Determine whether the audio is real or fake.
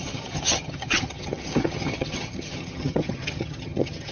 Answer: fake